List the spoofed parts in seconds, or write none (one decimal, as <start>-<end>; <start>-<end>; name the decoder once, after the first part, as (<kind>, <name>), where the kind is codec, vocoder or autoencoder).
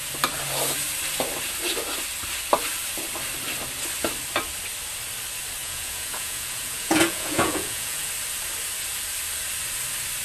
5.6-8.1 (vocoder, Vocos)